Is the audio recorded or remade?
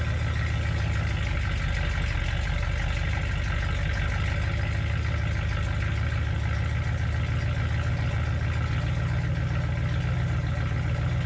recorded